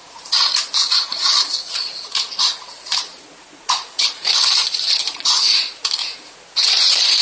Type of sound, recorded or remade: remade